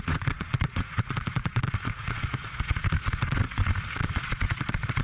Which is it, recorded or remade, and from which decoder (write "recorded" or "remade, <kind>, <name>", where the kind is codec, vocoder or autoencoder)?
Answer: remade, vocoder, Vocos